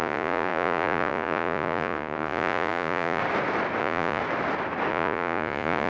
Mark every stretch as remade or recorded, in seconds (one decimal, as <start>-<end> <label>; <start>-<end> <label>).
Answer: 0.0-3.2 remade; 3.2-3.8 recorded; 3.8-4.2 remade; 4.2-4.9 recorded; 4.9-5.9 remade